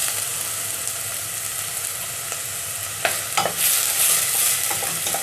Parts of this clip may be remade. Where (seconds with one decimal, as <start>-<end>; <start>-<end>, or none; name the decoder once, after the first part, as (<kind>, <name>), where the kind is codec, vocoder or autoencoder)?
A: none